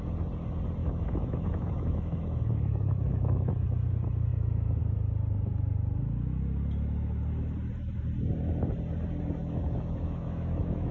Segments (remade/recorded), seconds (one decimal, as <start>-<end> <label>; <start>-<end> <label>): 0.0-0.8 recorded; 0.8-3.5 remade; 3.5-4.3 recorded; 4.3-4.8 remade; 4.8-9.4 recorded; 9.4-10.9 remade